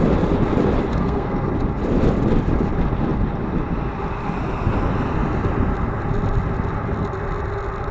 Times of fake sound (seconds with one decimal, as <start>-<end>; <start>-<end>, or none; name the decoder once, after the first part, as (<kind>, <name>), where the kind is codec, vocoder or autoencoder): 0.9-1.5 (codec, SNAC)